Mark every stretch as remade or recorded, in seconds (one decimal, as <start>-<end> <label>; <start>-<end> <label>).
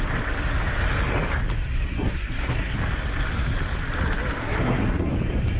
0.0-1.7 recorded; 1.7-2.7 remade; 2.7-4.4 recorded; 4.4-5.1 remade; 5.1-5.6 recorded